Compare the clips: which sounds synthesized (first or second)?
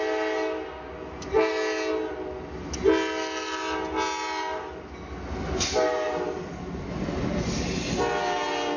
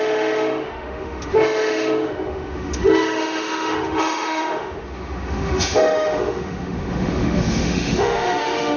second